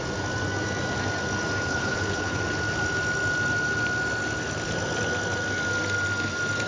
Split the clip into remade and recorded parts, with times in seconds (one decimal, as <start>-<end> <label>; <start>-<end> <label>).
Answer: 0.0-1.7 recorded; 1.7-2.4 remade; 2.4-6.7 recorded